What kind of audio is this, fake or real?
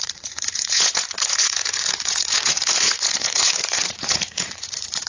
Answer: fake